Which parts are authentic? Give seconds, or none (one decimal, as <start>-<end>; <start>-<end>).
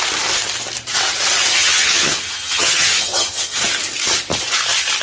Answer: 0.0-1.5; 3.6-5.0